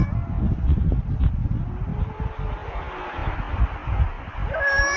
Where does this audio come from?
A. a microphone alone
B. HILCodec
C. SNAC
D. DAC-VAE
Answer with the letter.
A